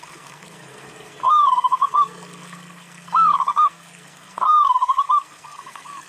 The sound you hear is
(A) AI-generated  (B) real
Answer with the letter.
A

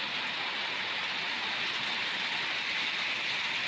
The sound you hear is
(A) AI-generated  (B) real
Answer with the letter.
B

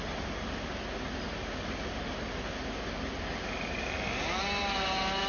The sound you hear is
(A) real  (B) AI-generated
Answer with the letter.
A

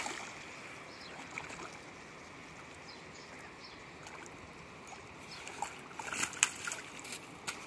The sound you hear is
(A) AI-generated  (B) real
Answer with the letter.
B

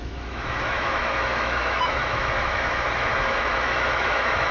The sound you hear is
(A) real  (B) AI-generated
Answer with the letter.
B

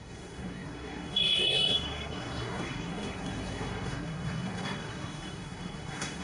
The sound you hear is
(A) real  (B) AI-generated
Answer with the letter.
B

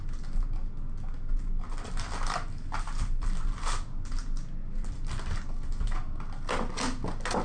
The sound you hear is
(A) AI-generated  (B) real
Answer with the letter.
B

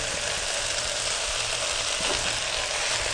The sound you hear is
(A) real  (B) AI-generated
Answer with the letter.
A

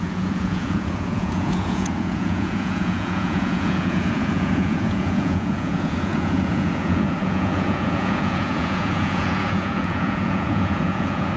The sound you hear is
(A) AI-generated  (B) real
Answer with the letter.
A